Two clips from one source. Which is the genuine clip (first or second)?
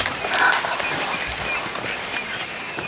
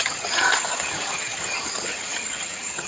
first